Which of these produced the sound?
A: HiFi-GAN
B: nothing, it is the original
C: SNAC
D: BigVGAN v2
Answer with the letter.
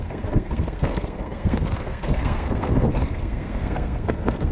C